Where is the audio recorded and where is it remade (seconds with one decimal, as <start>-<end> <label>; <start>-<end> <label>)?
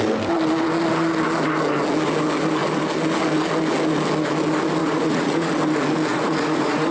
0.0-4.8 recorded; 4.8-5.5 remade; 5.5-6.1 recorded; 6.1-6.9 remade